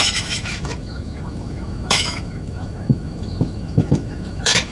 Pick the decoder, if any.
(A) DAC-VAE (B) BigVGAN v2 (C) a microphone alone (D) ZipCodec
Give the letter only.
A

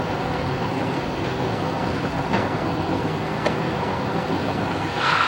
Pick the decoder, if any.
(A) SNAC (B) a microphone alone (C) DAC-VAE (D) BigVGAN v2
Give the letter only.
A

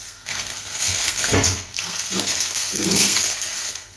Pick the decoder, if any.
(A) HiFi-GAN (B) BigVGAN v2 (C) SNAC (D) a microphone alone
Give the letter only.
C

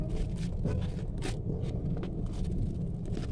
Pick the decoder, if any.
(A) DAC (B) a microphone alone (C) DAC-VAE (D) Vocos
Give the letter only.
B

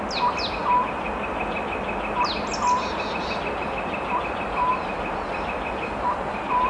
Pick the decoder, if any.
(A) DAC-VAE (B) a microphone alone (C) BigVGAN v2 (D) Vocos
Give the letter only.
B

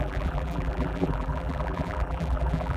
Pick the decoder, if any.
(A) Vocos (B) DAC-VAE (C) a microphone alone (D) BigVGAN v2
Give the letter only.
D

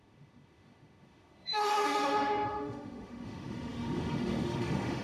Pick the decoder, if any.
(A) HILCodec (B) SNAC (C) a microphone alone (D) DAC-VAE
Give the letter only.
D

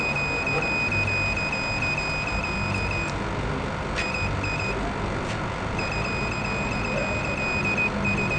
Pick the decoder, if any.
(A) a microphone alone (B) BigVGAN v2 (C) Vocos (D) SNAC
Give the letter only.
A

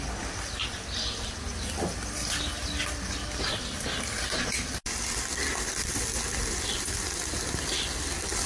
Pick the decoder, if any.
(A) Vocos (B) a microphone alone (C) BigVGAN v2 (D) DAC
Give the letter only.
B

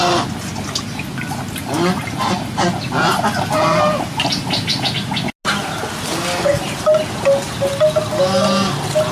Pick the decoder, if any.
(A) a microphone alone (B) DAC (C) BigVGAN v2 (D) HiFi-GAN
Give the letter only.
A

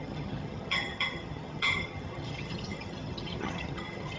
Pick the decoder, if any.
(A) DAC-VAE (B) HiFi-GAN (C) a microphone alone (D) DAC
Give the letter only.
B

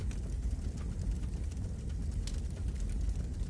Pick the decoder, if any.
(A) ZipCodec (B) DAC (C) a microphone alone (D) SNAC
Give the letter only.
C